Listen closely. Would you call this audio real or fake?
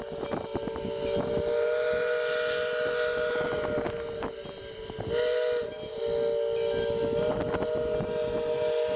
real